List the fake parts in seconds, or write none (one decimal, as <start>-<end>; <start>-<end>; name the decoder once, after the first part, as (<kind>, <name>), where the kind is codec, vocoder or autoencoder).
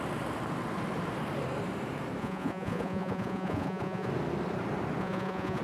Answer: 2.2-4.1 (vocoder, Vocos); 5.0-5.6